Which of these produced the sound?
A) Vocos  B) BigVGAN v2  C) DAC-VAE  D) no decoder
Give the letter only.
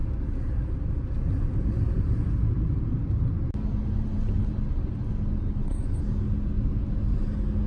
D